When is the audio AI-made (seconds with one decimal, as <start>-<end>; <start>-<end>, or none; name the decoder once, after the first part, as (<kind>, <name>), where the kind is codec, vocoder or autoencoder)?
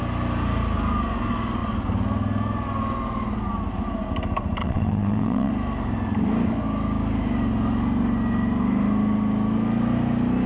4.6-5.5 (vocoder, WaveNeXt)